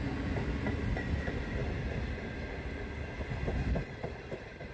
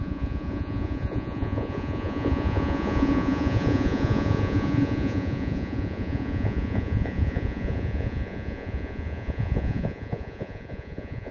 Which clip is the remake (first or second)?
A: second